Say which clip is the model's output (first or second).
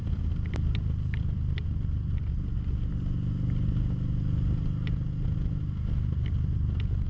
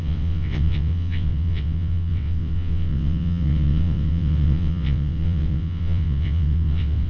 second